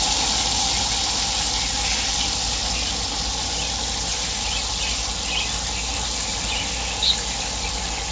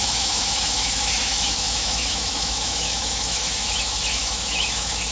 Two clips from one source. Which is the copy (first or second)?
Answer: second